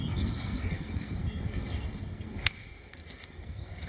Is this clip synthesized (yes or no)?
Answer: yes